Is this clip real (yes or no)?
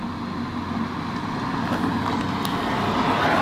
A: yes